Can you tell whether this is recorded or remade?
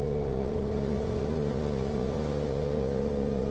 remade